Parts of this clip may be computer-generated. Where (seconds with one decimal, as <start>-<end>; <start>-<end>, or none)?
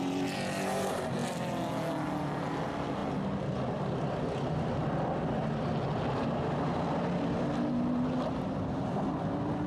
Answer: none